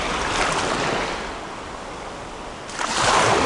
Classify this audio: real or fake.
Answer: real